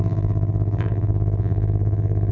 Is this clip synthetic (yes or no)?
yes